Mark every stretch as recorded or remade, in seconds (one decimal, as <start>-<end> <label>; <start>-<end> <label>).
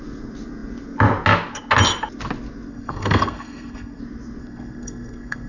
0.0-2.7 recorded; 2.7-4.0 remade; 4.0-4.4 recorded; 4.4-5.5 remade